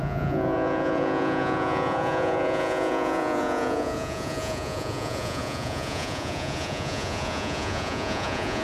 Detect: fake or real fake